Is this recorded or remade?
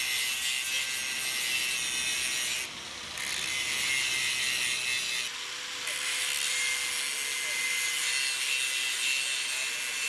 recorded